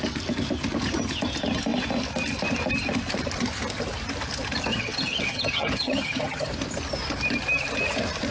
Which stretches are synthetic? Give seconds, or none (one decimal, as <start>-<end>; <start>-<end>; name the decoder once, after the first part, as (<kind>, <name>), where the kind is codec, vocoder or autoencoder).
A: 4.7-6.5 (vocoder, HiFi-GAN)